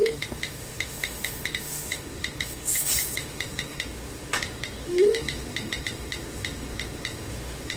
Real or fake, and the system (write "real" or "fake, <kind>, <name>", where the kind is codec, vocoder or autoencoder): fake, autoencoder, DAC-VAE